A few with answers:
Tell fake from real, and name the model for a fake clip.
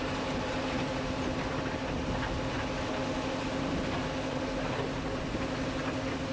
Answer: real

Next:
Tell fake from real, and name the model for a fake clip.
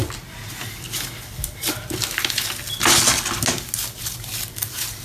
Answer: real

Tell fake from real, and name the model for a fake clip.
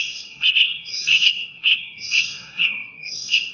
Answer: fake, codec, SNAC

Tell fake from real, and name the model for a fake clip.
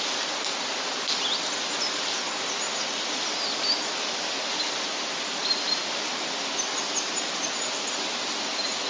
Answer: real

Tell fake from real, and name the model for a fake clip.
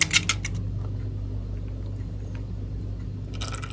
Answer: real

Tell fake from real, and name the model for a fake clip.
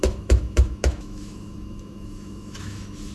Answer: fake, autoencoder, DAC-VAE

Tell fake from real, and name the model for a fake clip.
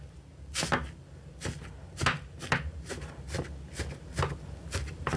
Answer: real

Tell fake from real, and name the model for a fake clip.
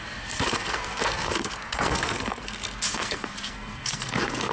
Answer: fake, codec, SNAC